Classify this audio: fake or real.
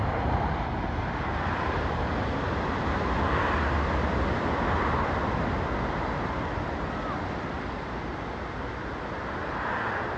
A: real